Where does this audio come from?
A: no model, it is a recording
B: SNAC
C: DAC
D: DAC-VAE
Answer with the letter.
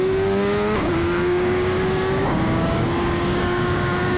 C